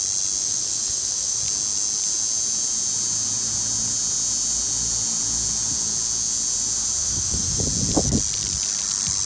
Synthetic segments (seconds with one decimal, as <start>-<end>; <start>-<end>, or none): 0.4-1.4; 7.0-7.6